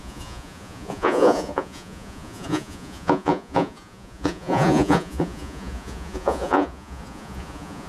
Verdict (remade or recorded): remade